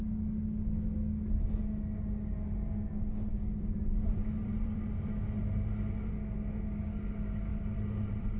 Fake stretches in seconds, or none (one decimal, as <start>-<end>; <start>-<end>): 3.3-5.2; 7.5-8.4